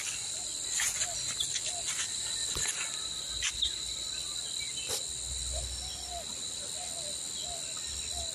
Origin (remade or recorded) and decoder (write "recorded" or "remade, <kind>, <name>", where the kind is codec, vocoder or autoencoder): recorded